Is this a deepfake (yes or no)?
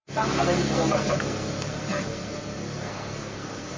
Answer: yes